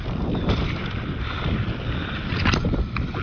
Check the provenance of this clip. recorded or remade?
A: recorded